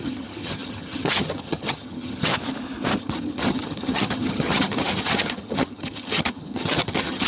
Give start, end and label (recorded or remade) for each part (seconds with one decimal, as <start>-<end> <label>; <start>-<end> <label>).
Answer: 0.0-2.3 remade; 2.3-3.0 recorded; 3.0-7.3 remade